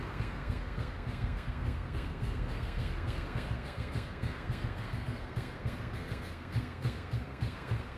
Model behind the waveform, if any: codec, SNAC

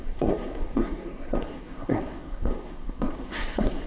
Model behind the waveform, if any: codec, SNAC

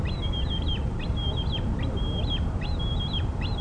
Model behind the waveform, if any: none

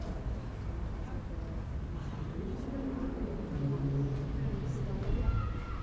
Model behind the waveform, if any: none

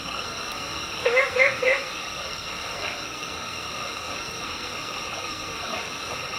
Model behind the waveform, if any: codec, SNAC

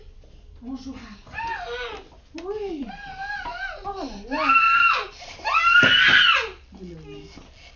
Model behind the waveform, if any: none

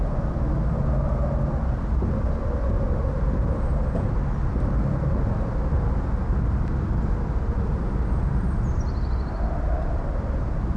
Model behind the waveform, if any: none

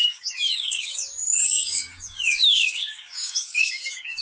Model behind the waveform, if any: codec, DAC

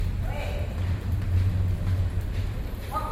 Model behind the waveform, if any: none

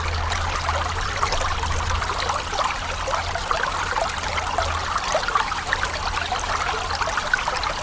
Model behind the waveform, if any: none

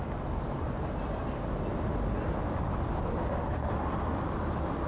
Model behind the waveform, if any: none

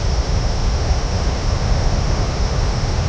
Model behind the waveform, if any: autoencoder, DAC-VAE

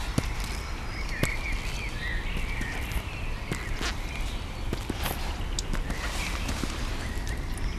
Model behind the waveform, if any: none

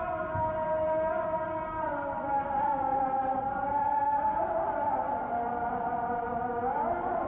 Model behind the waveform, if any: vocoder, BigVGAN v2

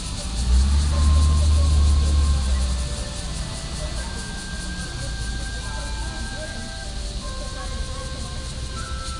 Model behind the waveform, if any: none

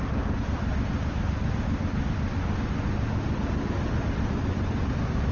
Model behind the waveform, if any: none